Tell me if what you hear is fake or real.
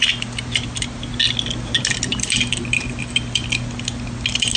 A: real